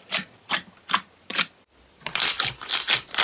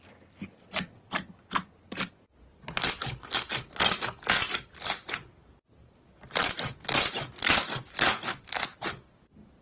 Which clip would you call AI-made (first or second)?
first